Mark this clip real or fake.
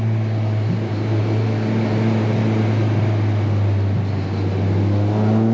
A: real